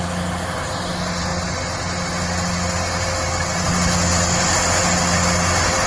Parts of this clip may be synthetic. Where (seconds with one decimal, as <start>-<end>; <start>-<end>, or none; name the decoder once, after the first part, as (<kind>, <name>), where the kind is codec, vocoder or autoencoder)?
none